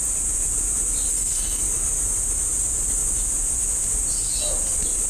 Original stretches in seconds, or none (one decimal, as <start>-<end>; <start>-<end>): 0.0-1.1; 1.6-5.1